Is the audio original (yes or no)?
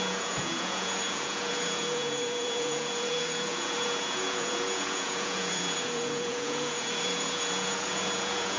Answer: no